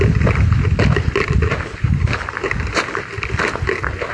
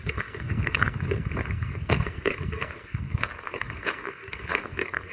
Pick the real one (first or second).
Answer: first